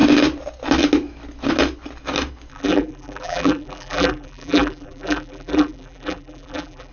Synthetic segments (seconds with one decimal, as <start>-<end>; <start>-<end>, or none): 2.5-6.9